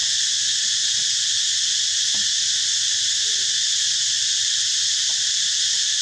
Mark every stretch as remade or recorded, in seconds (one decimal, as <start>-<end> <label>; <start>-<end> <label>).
0.0-3.4 recorded; 3.4-6.0 remade